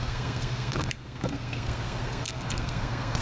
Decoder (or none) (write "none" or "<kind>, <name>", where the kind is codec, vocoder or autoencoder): codec, SNAC